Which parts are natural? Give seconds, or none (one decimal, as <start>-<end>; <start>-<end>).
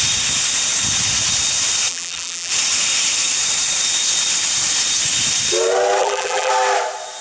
0.0-1.9; 2.5-6.0; 6.5-7.2